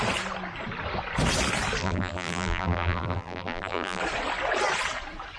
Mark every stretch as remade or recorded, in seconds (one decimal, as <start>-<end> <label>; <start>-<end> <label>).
0.0-1.8 recorded; 1.8-4.0 remade; 4.0-5.4 recorded